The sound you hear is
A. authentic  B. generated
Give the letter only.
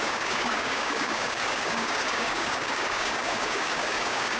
B